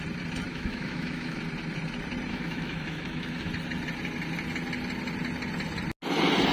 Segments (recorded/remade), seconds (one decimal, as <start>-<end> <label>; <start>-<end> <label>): 0.0-0.5 recorded; 0.5-1.4 remade; 1.4-2.3 recorded; 2.3-3.5 remade; 3.5-6.5 recorded